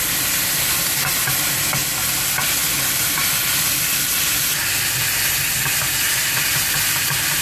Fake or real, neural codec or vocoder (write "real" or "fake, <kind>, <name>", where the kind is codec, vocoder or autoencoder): real